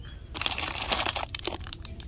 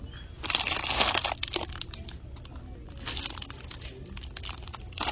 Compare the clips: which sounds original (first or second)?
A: second